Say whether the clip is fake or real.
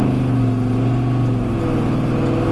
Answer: real